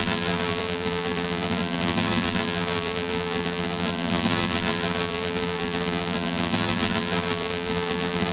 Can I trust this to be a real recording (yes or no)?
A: no